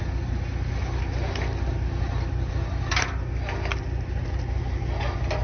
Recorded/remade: recorded